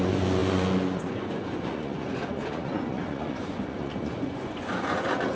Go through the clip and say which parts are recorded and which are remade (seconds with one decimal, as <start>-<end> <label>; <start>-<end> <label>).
0.0-5.3 remade